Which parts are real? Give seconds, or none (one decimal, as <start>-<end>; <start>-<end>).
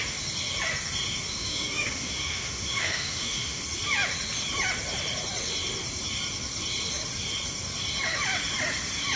0.0-1.4; 3.6-9.2